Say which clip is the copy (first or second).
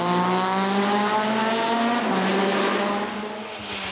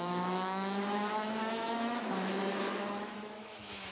second